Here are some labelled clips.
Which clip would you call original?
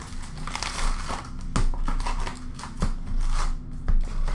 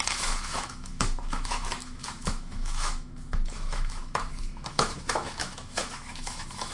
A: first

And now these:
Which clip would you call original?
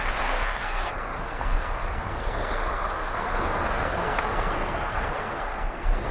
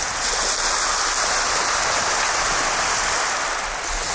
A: second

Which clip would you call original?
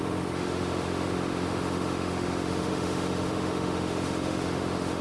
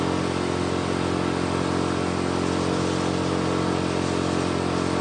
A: second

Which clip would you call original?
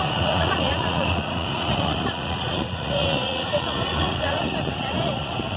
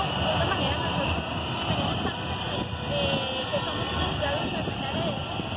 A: second